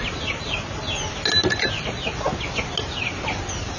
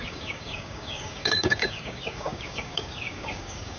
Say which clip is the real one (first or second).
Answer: first